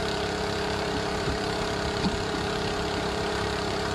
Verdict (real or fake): fake